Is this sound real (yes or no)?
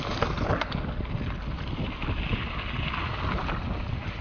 yes